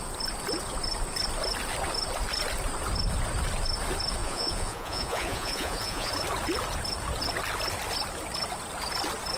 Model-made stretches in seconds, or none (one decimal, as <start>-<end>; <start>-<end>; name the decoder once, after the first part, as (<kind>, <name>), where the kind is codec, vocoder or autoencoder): 4.2-6.1 (vocoder, Vocos)